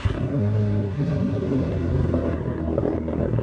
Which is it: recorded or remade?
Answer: remade